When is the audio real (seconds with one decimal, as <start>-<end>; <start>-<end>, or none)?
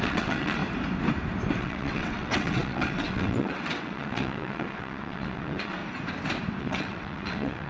0.6-1.6; 5.8-6.6